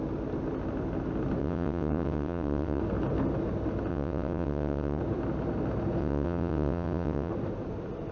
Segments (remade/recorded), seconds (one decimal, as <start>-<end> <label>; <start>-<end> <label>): 0.0-1.4 recorded; 1.4-2.8 remade; 2.8-3.9 recorded; 3.9-5.0 remade; 5.0-6.0 recorded; 6.0-7.3 remade; 7.3-8.1 recorded